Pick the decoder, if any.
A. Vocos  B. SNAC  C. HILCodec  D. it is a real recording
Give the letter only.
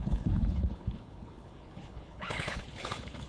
C